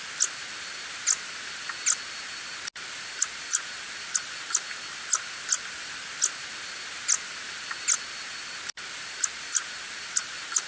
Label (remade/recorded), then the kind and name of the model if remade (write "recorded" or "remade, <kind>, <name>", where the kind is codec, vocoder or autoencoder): recorded